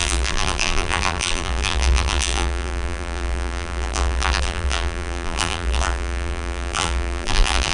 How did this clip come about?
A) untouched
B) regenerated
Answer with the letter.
B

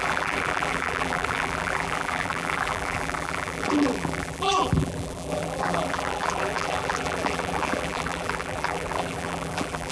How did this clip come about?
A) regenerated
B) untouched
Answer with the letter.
A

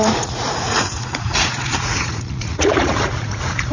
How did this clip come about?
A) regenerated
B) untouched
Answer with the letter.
A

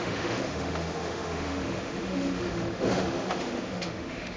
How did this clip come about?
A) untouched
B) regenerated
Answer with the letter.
B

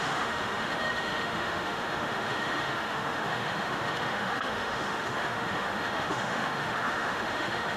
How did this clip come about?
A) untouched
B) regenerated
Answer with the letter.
B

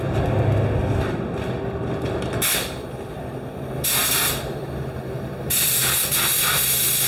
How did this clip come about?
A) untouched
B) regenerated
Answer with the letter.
A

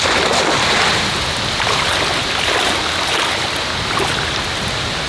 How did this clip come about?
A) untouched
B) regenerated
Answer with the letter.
A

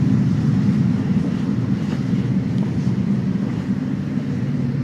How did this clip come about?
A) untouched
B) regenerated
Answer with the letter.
B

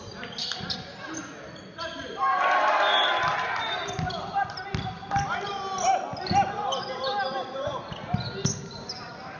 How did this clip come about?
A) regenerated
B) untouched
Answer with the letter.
B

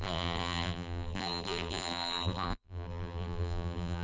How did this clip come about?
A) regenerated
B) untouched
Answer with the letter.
A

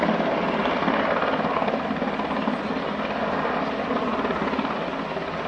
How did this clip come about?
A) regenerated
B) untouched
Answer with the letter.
B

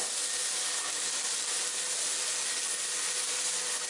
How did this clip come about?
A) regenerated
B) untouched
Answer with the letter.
B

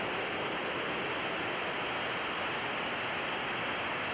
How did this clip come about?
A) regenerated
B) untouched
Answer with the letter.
B